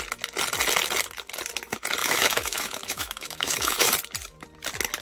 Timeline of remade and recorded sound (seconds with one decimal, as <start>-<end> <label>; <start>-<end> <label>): 0.0-2.0 recorded; 2.0-3.9 remade; 3.9-5.0 recorded